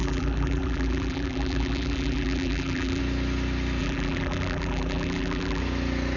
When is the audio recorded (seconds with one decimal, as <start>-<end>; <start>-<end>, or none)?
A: 3.0-3.8; 5.6-6.2